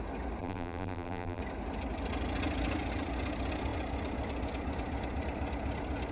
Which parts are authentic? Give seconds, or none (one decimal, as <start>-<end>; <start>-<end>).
0.0-0.4; 1.4-6.1